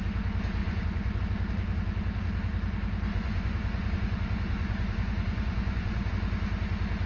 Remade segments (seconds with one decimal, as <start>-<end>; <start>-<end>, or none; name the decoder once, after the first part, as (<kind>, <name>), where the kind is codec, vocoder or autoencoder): 0.6-1.2 (vocoder, Vocos); 3.1-6.1